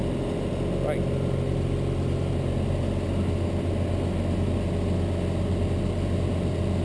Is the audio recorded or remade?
recorded